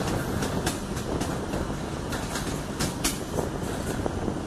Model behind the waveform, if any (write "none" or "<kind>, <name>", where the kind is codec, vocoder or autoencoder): none